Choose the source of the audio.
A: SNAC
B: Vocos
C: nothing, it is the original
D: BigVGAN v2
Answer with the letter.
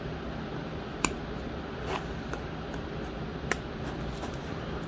C